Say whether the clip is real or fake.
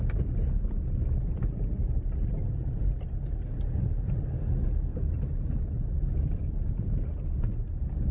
real